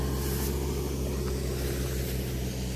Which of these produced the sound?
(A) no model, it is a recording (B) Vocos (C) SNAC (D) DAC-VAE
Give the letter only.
A